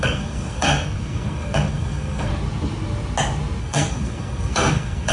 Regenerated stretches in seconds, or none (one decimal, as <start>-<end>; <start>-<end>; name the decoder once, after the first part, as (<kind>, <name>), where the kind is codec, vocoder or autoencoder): 0.0-2.3 (codec, SNAC); 3.6-5.1